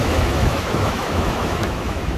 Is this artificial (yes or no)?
yes